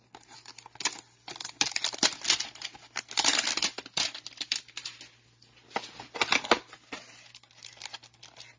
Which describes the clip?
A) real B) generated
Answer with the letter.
A